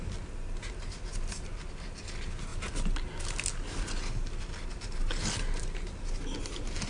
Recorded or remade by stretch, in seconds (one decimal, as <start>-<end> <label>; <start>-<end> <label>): 0.0-6.9 recorded